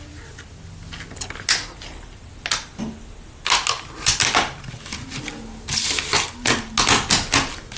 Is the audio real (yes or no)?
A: yes